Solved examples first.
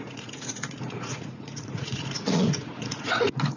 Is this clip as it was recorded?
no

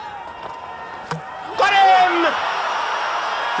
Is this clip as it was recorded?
yes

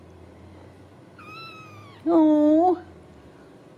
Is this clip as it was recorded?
yes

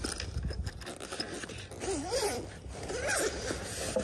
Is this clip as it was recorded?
yes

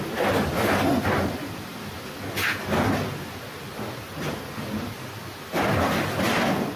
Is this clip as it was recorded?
yes